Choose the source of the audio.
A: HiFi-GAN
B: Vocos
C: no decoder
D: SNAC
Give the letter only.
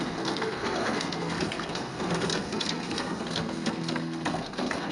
D